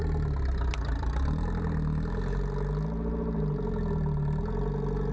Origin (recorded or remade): recorded